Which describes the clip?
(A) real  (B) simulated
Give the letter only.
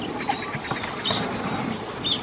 A